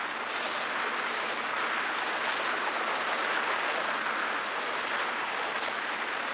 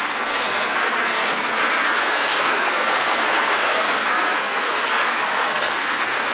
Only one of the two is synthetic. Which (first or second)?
second